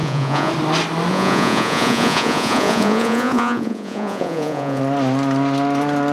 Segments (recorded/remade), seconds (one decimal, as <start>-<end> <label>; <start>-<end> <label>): 0.0-0.5 remade; 0.5-1.1 recorded; 1.1-4.8 remade; 4.8-6.1 recorded